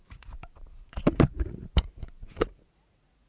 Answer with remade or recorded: remade